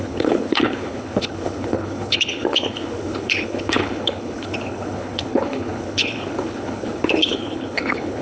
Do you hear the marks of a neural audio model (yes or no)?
yes